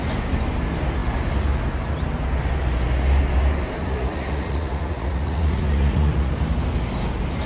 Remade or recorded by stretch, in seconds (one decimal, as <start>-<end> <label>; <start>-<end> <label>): 0.0-3.8 recorded; 3.8-6.3 remade; 6.3-7.5 recorded